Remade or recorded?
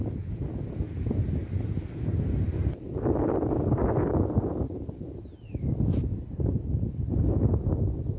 recorded